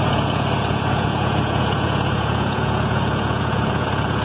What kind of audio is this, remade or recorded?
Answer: remade